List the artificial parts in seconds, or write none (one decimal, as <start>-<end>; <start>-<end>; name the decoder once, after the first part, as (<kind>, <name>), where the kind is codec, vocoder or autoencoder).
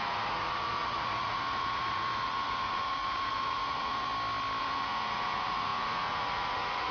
0.0-4.1 (vocoder, Vocos); 4.6-6.9